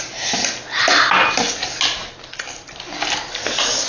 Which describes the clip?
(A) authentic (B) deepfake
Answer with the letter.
A